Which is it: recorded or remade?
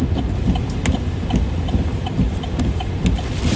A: recorded